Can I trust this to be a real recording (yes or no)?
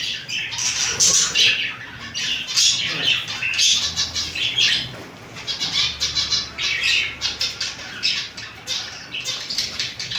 yes